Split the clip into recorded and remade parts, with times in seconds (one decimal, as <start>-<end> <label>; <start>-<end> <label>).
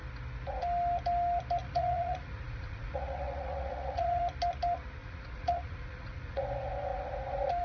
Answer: 0.0-1.6 recorded; 1.6-4.2 remade; 4.2-5.0 recorded; 5.0-6.4 remade; 6.4-7.6 recorded